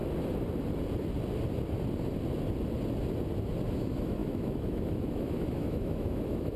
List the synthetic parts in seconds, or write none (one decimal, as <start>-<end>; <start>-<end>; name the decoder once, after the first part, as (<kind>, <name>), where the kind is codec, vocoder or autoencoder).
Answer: 3.7-6.6 (autoencoder, DAC-VAE)